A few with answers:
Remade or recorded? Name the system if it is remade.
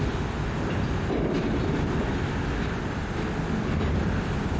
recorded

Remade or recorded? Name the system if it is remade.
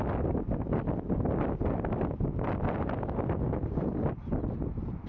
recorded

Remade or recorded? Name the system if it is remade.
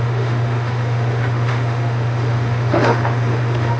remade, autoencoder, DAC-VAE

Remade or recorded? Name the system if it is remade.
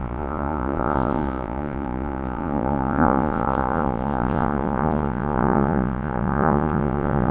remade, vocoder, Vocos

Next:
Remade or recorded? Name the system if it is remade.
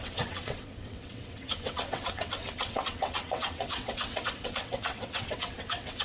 remade, vocoder, WaveNeXt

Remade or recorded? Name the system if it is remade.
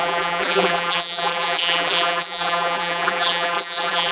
remade, vocoder, BigVGAN v2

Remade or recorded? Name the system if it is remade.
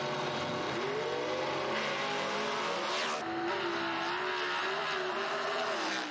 recorded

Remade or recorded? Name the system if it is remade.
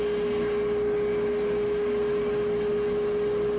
recorded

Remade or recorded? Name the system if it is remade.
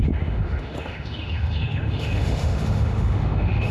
remade, autoencoder, DAC-VAE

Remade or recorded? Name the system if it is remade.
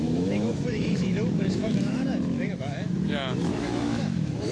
remade, autoencoder, DAC-VAE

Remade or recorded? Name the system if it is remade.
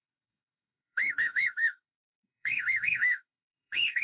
remade, codec, DAC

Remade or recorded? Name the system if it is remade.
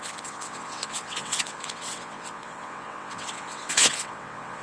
remade, vocoder, WaveNeXt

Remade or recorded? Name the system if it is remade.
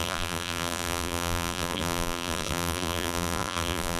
remade, vocoder, BigVGAN v2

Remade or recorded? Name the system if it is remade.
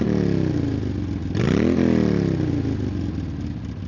recorded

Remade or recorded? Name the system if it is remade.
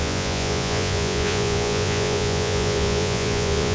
remade, vocoder, Vocos